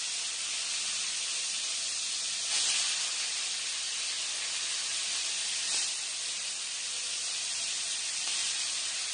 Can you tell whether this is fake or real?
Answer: real